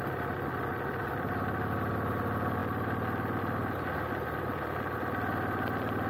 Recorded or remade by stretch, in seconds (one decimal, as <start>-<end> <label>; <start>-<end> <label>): 0.0-6.1 recorded